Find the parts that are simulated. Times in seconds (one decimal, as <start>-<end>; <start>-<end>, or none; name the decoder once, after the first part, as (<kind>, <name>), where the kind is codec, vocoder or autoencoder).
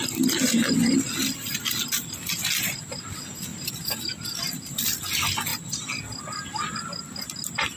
none